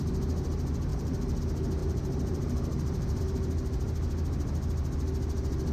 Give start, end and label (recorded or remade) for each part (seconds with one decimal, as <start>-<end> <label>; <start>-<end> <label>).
0.0-0.9 recorded; 0.9-1.4 remade; 1.4-1.8 recorded; 1.8-3.2 remade; 3.2-5.7 recorded